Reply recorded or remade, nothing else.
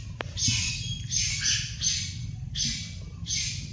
recorded